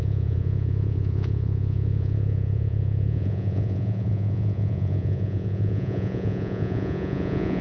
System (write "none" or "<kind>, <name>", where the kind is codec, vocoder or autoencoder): vocoder, Vocos